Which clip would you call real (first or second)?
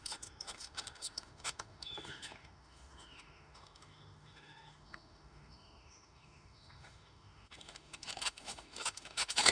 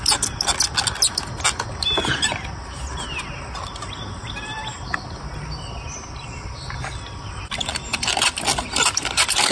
second